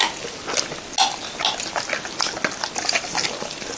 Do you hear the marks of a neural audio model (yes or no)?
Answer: no